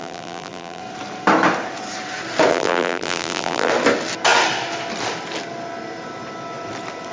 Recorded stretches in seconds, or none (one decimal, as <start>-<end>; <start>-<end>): 0.8-2.5; 3.7-7.1